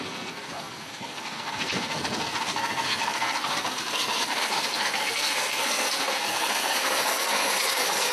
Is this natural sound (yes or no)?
no